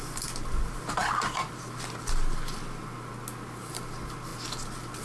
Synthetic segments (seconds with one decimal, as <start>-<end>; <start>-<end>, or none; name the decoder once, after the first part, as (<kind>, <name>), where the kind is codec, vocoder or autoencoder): none